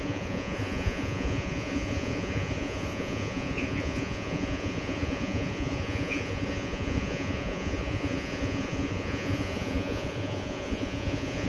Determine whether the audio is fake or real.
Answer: fake